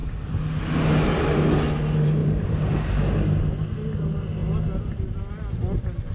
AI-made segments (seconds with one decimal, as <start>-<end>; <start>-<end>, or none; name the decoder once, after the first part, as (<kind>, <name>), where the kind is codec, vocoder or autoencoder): 2.2-3.4 (vocoder, BigVGAN v2)